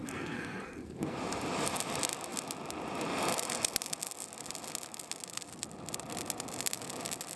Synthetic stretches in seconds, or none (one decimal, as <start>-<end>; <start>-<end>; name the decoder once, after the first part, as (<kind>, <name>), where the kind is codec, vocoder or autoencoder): 0.0-1.2 (codec, SNAC)